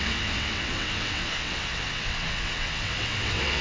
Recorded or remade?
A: remade